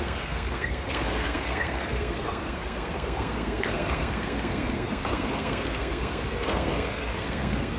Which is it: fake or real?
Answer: fake